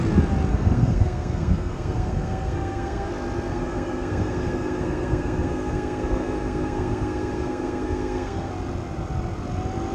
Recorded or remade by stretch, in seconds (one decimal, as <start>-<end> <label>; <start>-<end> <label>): 0.0-0.5 recorded; 0.5-3.1 remade; 3.1-3.5 recorded; 3.5-8.5 remade; 8.5-9.9 recorded